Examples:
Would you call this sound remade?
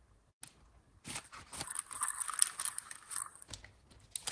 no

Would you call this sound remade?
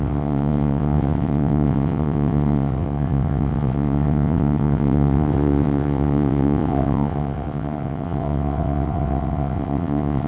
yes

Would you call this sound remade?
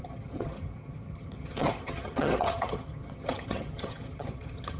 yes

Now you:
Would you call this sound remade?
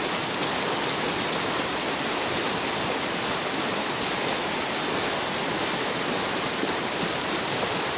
no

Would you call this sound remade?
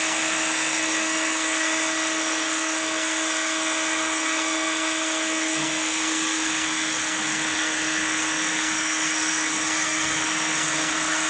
yes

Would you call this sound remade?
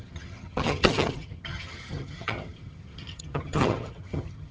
yes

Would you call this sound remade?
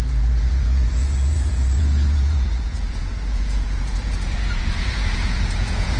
yes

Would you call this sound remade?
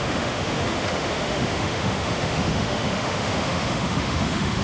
yes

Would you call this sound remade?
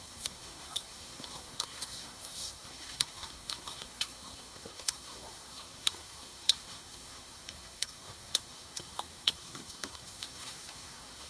yes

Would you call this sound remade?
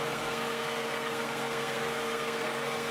yes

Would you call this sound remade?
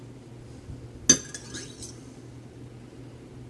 no